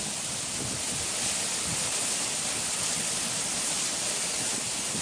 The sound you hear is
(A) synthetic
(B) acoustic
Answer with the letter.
B